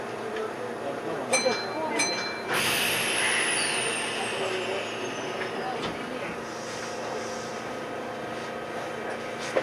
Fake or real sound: real